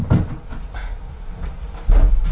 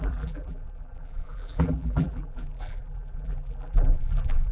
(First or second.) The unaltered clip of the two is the first